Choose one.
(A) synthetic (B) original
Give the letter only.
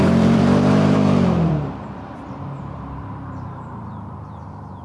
A